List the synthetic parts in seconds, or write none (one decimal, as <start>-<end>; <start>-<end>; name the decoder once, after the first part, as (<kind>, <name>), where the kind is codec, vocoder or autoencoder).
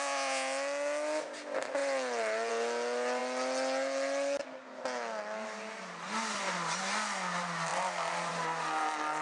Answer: none